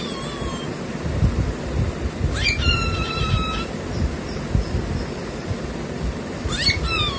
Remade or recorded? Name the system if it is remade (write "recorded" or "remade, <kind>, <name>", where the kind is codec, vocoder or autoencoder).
recorded